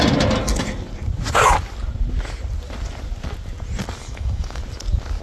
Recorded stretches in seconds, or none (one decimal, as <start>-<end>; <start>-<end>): 0.0-4.0; 4.6-5.2